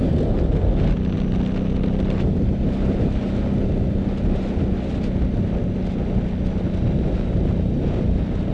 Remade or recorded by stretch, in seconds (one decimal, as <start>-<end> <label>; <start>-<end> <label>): 0.0-8.5 recorded

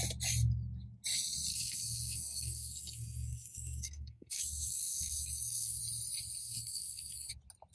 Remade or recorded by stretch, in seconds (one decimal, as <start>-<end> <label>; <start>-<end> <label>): 0.0-1.5 recorded; 1.5-5.8 remade; 5.8-6.4 recorded; 6.4-7.3 remade; 7.3-7.7 recorded